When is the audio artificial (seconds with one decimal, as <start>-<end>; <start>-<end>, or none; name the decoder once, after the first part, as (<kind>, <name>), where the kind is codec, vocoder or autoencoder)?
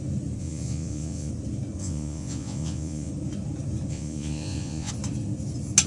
0.4-1.3 (vocoder, Vocos); 1.8-3.1; 3.9-4.9